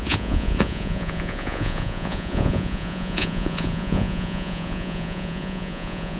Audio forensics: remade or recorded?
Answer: remade